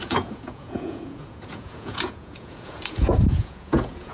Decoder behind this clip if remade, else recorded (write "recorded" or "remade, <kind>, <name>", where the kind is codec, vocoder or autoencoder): remade, vocoder, Vocos